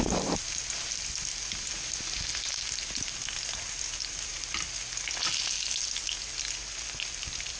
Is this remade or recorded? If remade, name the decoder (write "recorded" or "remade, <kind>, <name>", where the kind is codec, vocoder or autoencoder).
recorded